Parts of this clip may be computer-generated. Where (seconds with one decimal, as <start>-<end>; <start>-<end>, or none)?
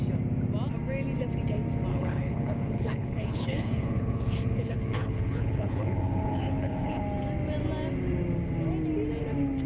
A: 1.9-7.0